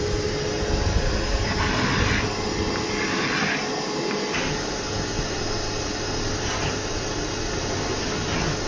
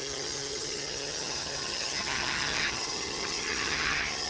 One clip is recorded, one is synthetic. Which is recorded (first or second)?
first